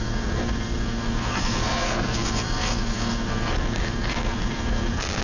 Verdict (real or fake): fake